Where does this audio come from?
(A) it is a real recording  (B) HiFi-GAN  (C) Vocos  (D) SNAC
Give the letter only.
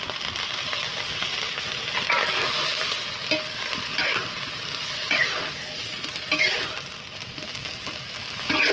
A